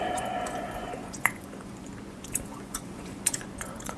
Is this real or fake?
fake